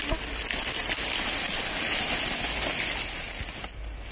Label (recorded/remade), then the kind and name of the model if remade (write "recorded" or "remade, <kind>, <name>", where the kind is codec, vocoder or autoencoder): recorded